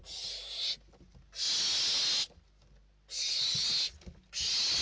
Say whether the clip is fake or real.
real